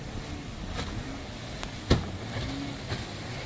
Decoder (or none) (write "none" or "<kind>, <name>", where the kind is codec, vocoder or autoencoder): none